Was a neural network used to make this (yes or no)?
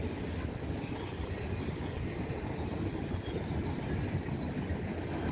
no